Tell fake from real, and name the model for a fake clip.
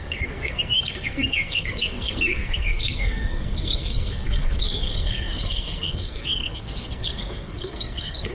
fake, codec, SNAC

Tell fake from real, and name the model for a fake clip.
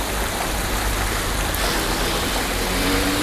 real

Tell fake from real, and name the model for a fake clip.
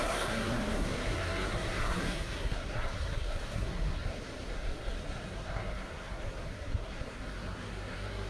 fake, codec, SNAC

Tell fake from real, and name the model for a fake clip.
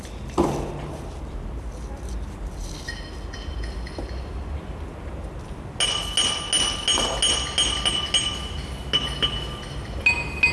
real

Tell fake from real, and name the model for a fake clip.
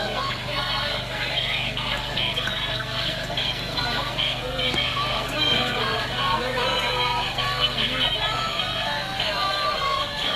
fake, codec, SNAC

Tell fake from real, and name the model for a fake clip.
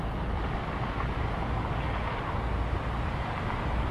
real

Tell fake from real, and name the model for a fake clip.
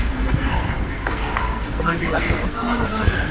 fake, codec, SNAC